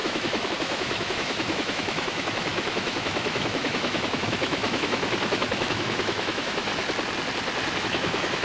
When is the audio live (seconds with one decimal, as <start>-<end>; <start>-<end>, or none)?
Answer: 6.7-7.8